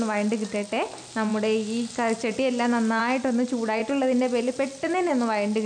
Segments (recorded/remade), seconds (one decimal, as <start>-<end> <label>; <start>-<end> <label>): 0.0-5.7 recorded